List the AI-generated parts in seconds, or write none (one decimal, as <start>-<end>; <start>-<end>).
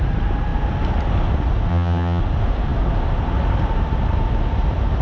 1.7-2.2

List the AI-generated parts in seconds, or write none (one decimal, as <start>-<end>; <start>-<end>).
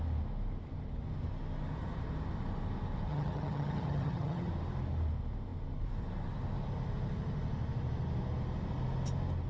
3.1-4.5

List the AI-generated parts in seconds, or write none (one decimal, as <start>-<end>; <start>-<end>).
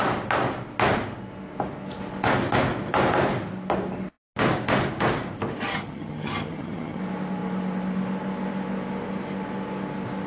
5.7-7.0